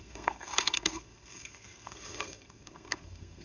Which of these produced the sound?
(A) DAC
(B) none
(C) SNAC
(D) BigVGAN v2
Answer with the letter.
C